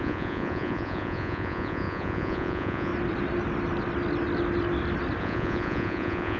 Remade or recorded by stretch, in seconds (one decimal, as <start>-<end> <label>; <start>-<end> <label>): 0.0-2.9 remade; 2.9-5.2 recorded; 5.2-6.4 remade